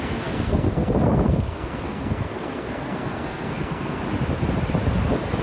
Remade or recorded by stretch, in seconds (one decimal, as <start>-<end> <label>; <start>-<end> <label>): 0.0-4.0 remade; 4.0-5.4 recorded